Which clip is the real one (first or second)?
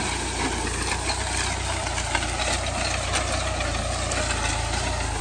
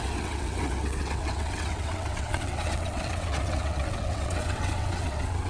first